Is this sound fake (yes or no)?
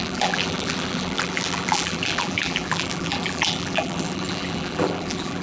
yes